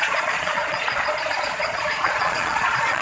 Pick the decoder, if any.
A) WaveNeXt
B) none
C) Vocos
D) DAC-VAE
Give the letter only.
C